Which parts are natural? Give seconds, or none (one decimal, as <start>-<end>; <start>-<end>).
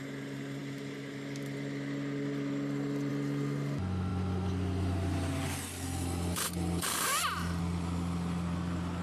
0.0-9.0